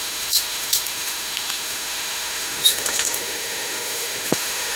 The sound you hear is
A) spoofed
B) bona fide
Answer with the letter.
A